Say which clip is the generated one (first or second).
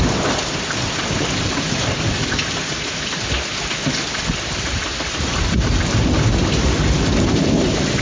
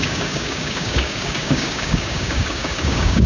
second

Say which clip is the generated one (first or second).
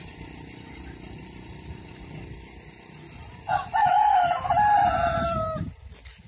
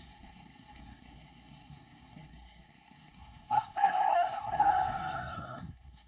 second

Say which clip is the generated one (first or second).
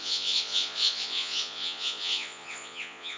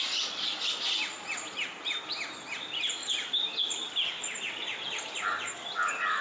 first